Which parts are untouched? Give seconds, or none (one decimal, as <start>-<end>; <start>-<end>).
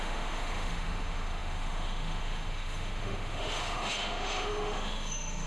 none